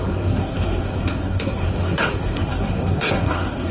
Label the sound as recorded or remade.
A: remade